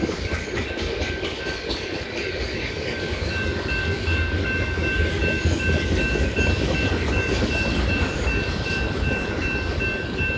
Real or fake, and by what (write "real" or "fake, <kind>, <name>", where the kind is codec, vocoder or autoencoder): fake, codec, DAC